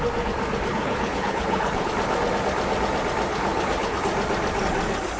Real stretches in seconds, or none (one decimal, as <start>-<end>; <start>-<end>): 0.0-0.7; 1.9-3.3; 4.0-5.2